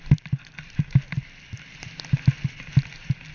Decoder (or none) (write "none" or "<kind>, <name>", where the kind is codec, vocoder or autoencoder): vocoder, BigVGAN v2